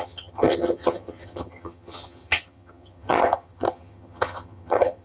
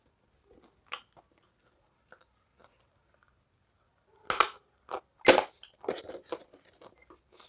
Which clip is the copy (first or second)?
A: first